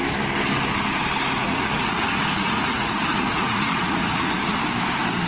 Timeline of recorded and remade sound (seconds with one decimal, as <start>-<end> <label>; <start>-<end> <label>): 0.0-1.4 recorded; 1.4-4.6 remade; 4.6-5.3 recorded